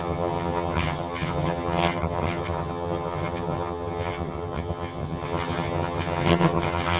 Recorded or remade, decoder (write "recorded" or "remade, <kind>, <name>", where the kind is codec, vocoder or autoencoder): remade, vocoder, HiFi-GAN